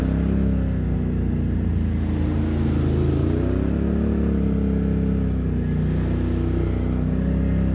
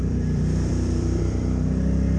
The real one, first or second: first